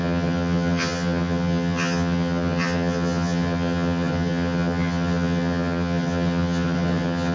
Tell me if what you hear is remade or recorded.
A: remade